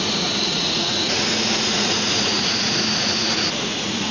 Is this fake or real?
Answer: fake